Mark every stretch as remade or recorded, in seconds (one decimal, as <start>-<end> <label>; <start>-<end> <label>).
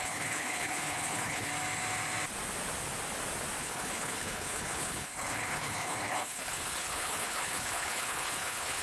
0.0-1.5 remade; 1.5-3.6 recorded; 3.6-8.8 remade